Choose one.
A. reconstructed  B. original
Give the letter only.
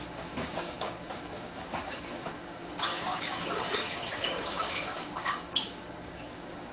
A